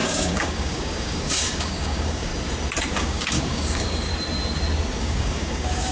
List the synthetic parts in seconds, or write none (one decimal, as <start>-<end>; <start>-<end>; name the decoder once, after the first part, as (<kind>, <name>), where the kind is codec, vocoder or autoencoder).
0.0-2.3 (codec, DAC); 2.9-4.1; 5.0-5.9